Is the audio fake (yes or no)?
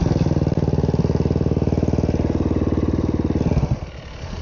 no